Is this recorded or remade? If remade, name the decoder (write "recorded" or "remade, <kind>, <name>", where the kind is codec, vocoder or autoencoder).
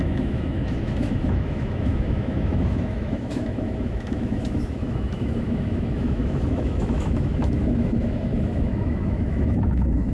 remade, autoencoder, DAC-VAE